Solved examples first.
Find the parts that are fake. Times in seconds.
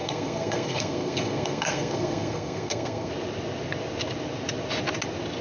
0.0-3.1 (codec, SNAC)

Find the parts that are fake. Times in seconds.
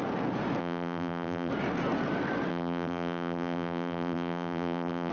0.6-1.5 (vocoder, BigVGAN v2); 2.5-5.1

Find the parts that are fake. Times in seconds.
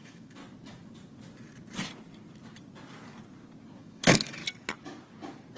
0.0-0.4 (autoencoder, DAC-VAE); 3.8-4.4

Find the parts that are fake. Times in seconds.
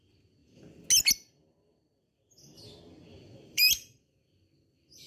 3.1-5.1 (vocoder, BigVGAN v2)